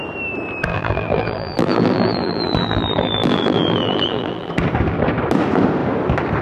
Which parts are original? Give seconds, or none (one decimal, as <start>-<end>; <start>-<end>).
0.0-0.7; 4.5-6.4